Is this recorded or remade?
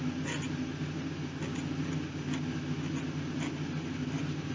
recorded